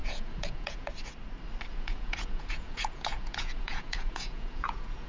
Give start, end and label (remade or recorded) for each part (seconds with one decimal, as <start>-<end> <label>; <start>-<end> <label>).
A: 0.0-0.9 remade; 0.9-1.7 recorded; 1.7-5.1 remade